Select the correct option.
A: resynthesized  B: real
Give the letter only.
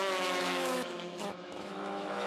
A